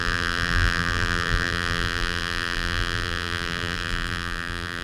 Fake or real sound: fake